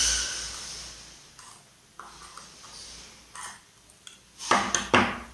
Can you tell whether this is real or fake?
real